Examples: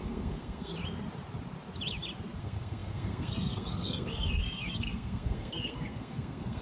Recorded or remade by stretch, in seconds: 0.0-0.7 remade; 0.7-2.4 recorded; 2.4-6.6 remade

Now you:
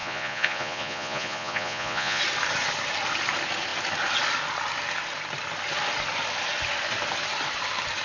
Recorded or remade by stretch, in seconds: 0.0-2.2 remade; 2.2-8.0 recorded